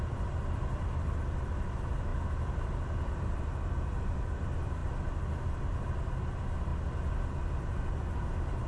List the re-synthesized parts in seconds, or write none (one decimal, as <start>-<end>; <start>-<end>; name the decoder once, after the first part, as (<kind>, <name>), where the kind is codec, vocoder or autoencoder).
0.0-6.7 (vocoder, BigVGAN v2); 7.4-8.7